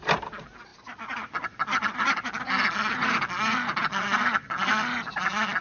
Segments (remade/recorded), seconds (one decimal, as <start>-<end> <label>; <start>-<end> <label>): 0.0-5.6 recorded